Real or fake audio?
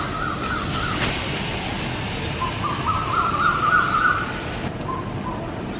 real